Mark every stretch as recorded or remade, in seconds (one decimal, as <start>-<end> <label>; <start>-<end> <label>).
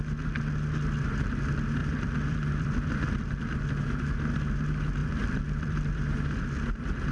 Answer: 0.0-1.8 recorded; 1.8-3.4 remade; 3.4-5.0 recorded; 5.0-6.4 remade; 6.4-7.1 recorded